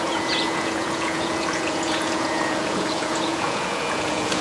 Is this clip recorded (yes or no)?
no